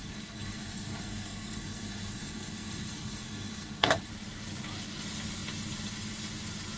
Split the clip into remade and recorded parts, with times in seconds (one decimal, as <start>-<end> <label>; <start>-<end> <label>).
0.0-4.1 remade; 4.1-6.8 recorded